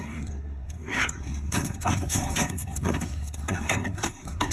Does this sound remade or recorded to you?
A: remade